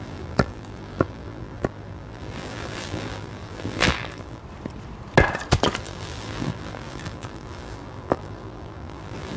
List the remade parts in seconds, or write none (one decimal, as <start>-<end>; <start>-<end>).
0.0-4.4; 5.8-9.4

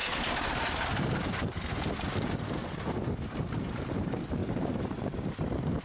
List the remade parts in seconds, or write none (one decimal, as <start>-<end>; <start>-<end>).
0.9-2.6; 3.7-5.8